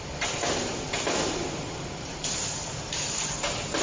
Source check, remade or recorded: recorded